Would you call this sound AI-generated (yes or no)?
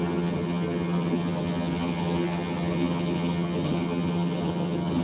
yes